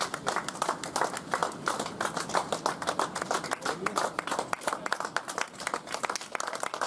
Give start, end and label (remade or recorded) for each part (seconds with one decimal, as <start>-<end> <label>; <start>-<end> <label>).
0.0-6.9 recorded